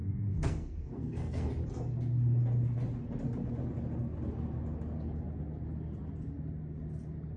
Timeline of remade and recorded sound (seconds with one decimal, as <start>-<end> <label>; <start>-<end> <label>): 0.0-1.5 remade; 1.5-7.4 recorded